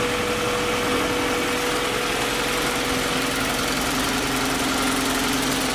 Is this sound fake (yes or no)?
no